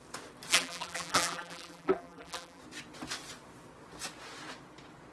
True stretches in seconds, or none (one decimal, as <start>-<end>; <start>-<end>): 0.0-0.5; 2.6-5.1